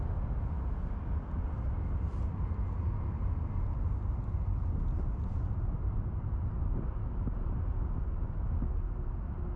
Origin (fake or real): real